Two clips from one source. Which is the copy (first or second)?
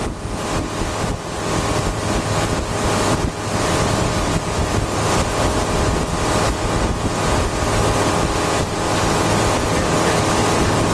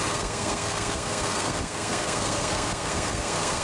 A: second